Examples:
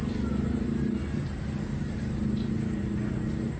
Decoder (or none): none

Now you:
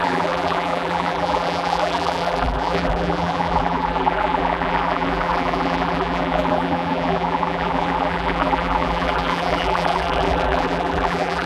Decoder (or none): vocoder, BigVGAN v2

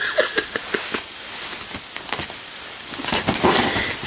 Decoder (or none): none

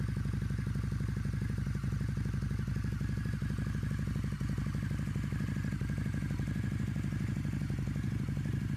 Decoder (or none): none